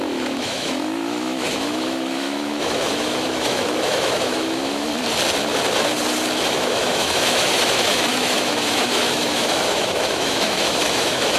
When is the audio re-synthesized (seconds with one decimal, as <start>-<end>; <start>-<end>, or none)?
0.0-4.9; 6.4-11.4

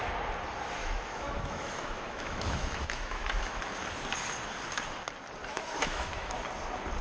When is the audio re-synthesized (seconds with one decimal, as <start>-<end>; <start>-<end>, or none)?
0.8-3.6; 5.5-6.4

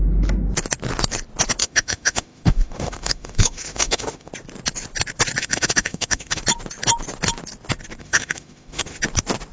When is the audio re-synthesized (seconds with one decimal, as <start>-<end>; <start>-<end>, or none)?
1.6-4.3; 5.4-6.4; 8.0-9.0